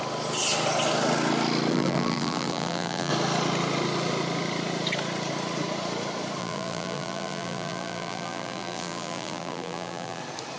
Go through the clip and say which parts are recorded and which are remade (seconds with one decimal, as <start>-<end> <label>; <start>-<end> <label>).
0.0-1.7 recorded; 1.7-3.1 remade; 3.1-6.4 recorded; 6.4-10.2 remade; 10.2-10.6 recorded